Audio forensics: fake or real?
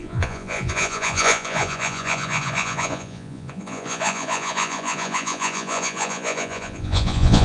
fake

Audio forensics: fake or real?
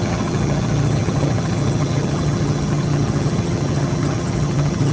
fake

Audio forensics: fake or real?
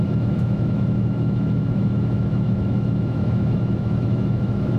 fake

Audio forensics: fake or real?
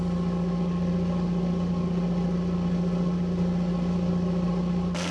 real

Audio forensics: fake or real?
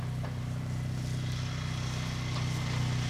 real